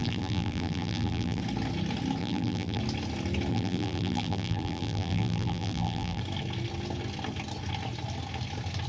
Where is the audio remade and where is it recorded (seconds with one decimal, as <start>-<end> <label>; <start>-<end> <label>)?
0.0-1.4 remade; 1.4-2.2 recorded; 2.2-2.8 remade; 2.8-3.5 recorded; 3.5-6.2 remade; 6.2-8.9 recorded